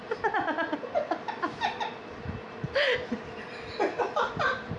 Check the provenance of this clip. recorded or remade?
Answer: recorded